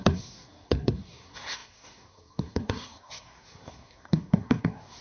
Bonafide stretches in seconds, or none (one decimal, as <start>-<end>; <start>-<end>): none